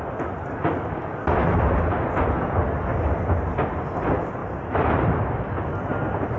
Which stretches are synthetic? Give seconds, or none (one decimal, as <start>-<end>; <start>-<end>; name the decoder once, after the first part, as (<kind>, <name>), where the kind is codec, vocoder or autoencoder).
none